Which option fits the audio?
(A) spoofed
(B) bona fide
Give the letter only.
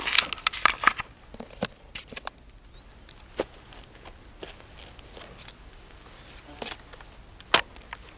B